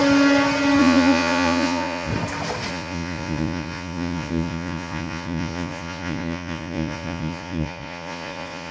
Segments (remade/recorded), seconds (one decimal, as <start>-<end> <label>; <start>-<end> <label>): 0.0-0.8 recorded; 0.8-2.1 remade; 2.1-2.7 recorded; 2.7-8.7 remade